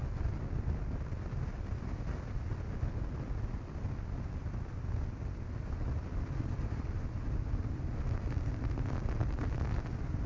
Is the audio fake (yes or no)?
no